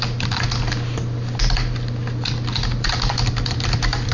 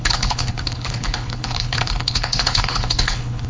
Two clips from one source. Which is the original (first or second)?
first